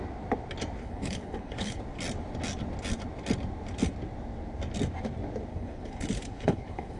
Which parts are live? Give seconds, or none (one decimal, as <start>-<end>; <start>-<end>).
0.0-0.8; 1.8-5.5